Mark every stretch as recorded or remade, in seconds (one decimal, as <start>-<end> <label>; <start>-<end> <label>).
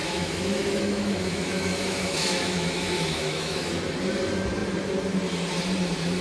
0.0-3.7 remade; 3.7-6.2 recorded